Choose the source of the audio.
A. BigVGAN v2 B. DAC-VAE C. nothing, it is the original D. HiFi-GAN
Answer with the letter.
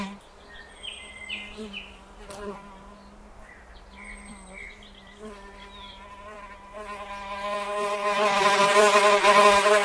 C